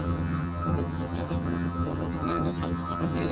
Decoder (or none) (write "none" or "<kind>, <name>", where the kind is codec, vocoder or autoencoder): vocoder, HiFi-GAN